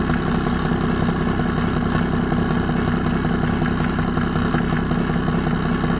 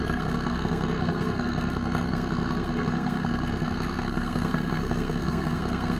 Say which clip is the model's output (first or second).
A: second